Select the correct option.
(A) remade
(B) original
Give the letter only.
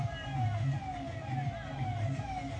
B